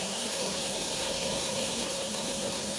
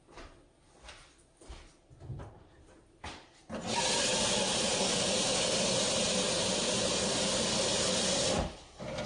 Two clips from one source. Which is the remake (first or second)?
first